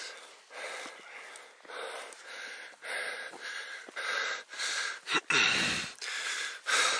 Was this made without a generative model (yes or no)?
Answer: yes